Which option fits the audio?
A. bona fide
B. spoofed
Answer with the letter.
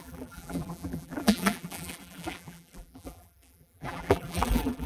B